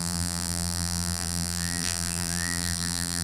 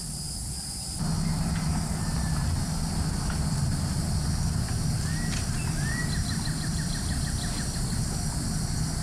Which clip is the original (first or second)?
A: second